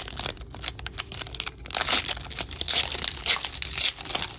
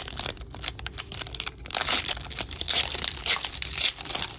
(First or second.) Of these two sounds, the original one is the first